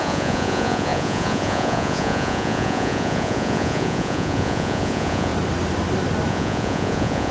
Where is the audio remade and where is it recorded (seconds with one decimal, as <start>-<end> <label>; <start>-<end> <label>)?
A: 0.0-5.3 remade; 5.3-6.3 recorded; 6.3-7.3 remade